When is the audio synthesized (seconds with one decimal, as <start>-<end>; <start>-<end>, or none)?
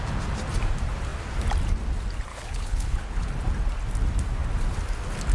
2.3-3.3